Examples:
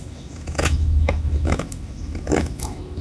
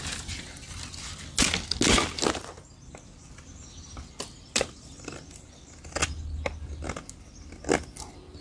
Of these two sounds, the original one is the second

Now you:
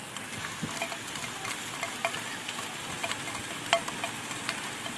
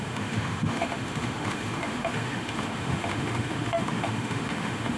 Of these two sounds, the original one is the first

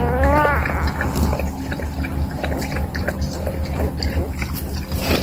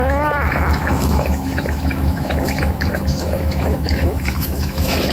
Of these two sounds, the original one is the first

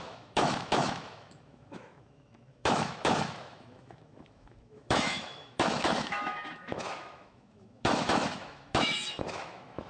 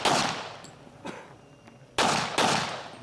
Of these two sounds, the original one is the second